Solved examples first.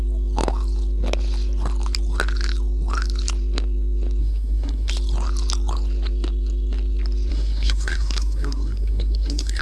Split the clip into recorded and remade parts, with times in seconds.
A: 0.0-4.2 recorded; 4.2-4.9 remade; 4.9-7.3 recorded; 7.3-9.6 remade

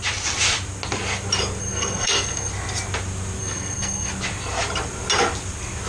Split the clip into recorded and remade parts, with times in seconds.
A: 0.0-1.6 recorded; 1.6-2.5 remade; 2.5-3.4 recorded; 3.4-4.1 remade; 4.1-5.9 recorded

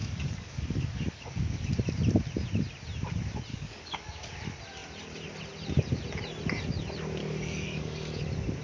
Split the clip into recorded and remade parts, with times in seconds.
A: 0.0-1.7 remade; 1.7-3.5 recorded; 3.5-4.3 remade; 4.3-7.2 recorded; 7.2-8.2 remade; 8.2-8.6 recorded

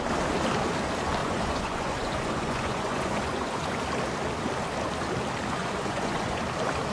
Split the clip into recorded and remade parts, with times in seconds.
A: 0.0-1.2 recorded; 1.2-3.8 remade; 3.8-5.6 recorded; 5.6-6.4 remade; 6.4-6.9 recorded

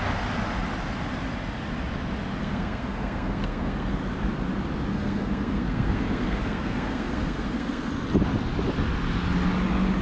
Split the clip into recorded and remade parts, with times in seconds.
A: 0.0-2.4 recorded; 2.4-3.9 remade; 3.9-4.9 recorded; 4.9-7.9 remade; 7.9-10.0 recorded

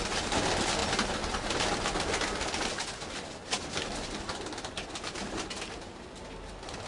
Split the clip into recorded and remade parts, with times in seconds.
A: 0.0-6.9 recorded